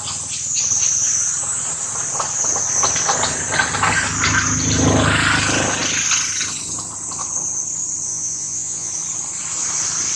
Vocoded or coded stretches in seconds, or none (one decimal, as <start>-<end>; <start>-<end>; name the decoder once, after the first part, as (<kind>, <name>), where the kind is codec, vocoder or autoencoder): 8.1-8.9 (vocoder, Vocos)